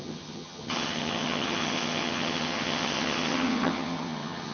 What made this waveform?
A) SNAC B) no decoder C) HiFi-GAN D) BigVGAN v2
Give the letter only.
C